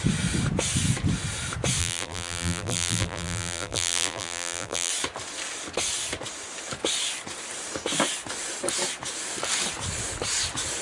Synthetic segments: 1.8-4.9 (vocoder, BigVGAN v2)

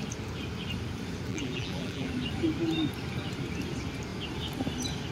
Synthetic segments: 1.3-2.1 (vocoder, BigVGAN v2)

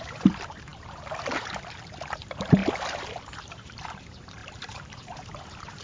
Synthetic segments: 0.0-2.6 (vocoder, BigVGAN v2); 3.3-5.8

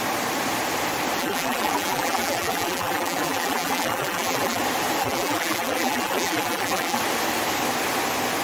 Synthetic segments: 1.2-4.6 (vocoder, BigVGAN v2); 5.0-7.0